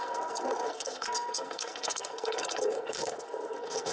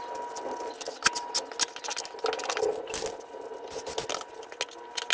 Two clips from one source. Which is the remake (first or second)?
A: first